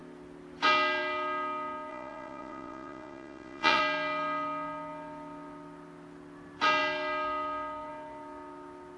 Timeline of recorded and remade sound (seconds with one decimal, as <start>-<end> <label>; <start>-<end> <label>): 0.0-1.9 recorded; 1.9-3.8 remade; 3.8-9.0 recorded